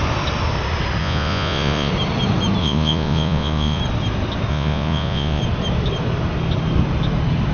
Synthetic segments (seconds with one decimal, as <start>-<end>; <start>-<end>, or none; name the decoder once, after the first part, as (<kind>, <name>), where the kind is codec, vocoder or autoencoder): 1.0-1.9 (vocoder, Vocos); 2.6-3.8; 4.5-5.4